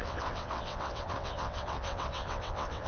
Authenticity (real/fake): fake